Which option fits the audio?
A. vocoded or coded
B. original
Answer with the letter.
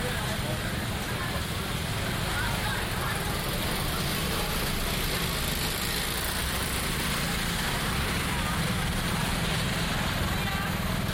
B